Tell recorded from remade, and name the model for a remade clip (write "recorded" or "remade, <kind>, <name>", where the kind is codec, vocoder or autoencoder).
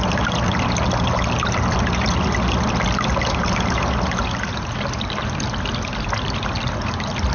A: recorded